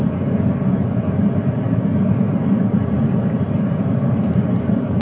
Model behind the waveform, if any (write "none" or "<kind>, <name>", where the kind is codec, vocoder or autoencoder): vocoder, BigVGAN v2